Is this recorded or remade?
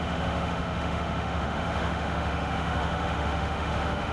remade